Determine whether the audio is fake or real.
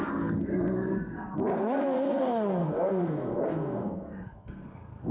fake